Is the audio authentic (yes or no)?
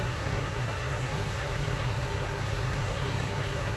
no